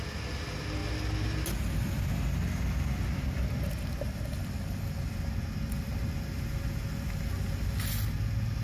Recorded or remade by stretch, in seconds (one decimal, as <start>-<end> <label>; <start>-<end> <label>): 0.0-8.6 recorded